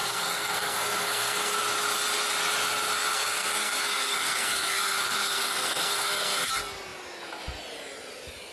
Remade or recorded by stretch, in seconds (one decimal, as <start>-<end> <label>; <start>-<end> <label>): 0.0-1.6 remade; 1.6-3.1 recorded; 3.1-6.5 remade; 6.5-8.5 recorded